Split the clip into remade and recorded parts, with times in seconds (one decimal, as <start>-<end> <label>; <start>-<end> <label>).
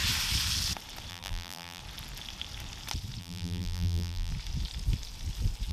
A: 0.0-1.1 recorded; 1.1-1.8 remade; 1.8-3.2 recorded; 3.2-4.3 remade; 4.3-5.7 recorded